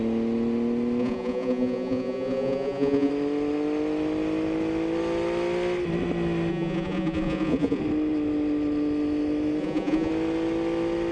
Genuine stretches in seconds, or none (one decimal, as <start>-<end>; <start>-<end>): 0.0-1.0; 3.1-6.5; 7.8-9.6; 10.1-11.1